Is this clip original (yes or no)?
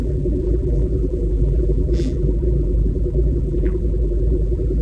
no